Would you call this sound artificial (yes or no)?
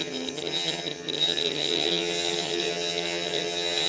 yes